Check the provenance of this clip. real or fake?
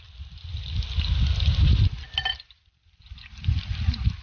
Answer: real